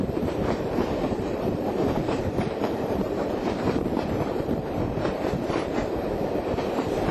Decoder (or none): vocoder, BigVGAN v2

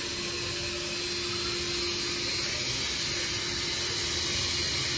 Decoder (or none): none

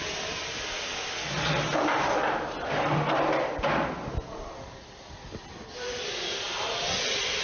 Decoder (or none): none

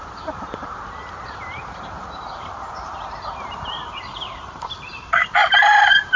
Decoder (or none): vocoder, BigVGAN v2